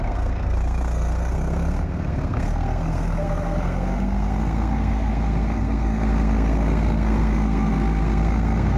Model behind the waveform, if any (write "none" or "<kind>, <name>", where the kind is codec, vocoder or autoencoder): codec, SNAC